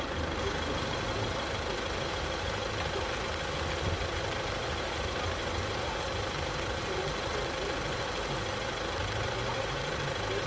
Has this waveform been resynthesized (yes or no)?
no